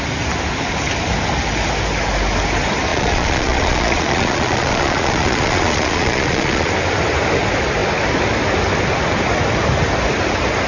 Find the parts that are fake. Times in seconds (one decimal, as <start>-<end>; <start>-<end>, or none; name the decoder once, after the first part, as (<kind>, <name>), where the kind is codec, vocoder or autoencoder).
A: 2.9-6.7 (vocoder, Vocos)